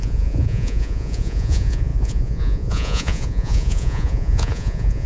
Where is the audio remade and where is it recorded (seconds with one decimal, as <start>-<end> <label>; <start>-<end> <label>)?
0.0-5.1 remade